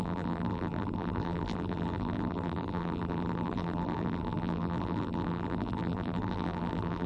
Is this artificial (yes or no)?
yes